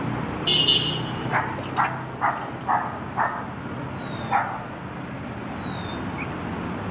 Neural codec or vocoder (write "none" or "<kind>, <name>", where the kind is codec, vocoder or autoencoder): none